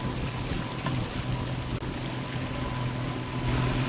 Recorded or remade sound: recorded